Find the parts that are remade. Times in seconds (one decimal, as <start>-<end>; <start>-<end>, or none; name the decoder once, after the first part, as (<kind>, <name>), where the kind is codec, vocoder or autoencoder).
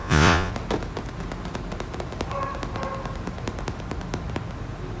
0.0-0.5 (vocoder, Vocos)